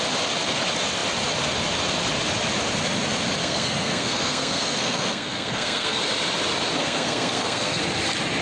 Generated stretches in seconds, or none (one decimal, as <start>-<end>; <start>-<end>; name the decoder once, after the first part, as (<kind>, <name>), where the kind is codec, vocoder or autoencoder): 3.4-6.0 (codec, SNAC); 6.8-7.8